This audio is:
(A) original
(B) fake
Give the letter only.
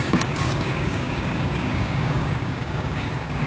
B